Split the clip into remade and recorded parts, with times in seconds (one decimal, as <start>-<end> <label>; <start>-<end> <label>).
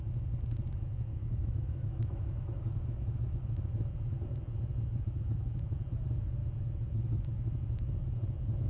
0.0-1.1 recorded; 1.1-3.7 remade; 3.7-8.7 recorded